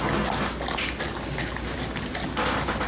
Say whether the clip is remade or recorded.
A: recorded